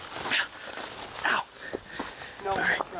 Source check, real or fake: real